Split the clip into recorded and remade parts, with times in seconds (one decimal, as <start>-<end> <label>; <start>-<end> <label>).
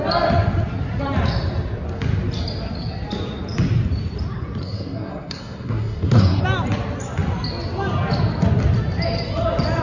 0.0-4.6 recorded; 4.6-6.4 remade; 6.4-9.8 recorded